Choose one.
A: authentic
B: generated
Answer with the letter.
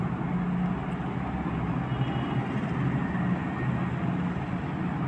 A